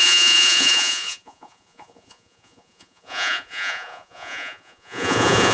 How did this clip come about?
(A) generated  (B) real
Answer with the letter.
A